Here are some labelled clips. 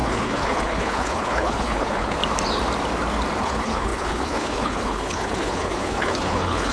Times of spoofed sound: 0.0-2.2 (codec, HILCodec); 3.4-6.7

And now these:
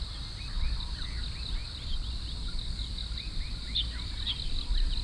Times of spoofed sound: none

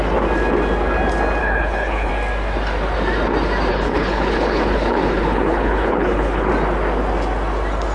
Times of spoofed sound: 1.4-2.1 (codec, HILCodec); 3.7-6.5

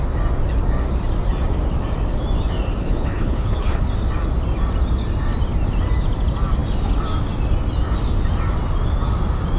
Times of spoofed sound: 2.8-3.9 (codec, HILCodec)

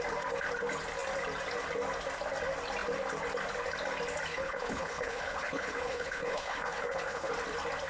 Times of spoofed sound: 4.3-7.3 (codec, HILCodec)

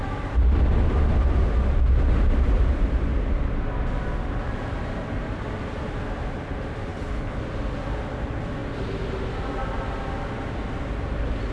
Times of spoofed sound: 6.9-7.4 (codec, HILCodec)

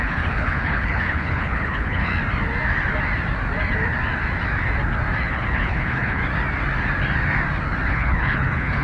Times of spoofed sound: 0.0-2.1 (codec, HILCodec); 5.2-6.2; 7.9-8.8

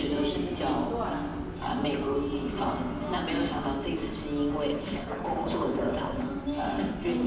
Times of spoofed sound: 4.7-6.3 (codec, HILCodec)